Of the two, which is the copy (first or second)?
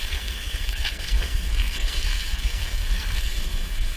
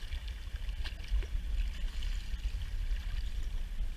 first